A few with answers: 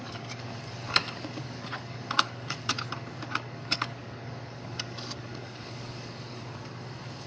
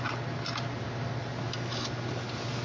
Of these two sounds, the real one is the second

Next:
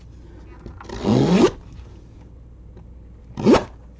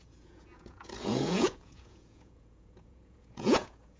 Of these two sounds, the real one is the first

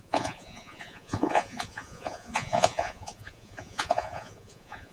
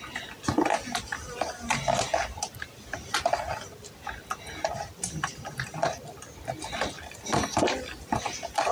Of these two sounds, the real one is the second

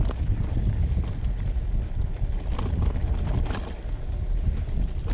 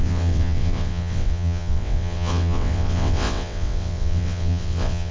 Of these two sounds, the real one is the first